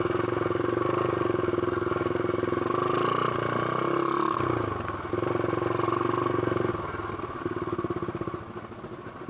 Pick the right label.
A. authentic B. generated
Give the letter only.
A